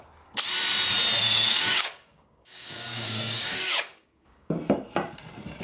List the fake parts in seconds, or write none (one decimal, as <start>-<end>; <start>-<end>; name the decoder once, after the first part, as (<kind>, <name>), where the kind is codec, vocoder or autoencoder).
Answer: 1.2-4.6 (codec, DAC)